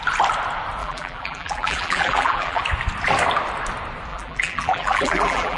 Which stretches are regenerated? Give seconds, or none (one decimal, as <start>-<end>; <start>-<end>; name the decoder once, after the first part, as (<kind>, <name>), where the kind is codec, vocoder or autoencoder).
0.8-2.6 (vocoder, BigVGAN v2); 4.1-5.6